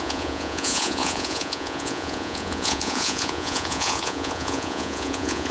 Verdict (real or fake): fake